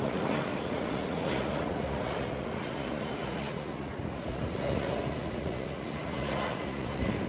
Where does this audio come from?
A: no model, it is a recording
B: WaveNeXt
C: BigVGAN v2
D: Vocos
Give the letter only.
D